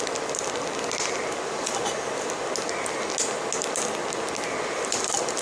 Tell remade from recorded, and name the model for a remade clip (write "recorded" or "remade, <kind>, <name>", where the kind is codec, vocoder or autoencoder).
recorded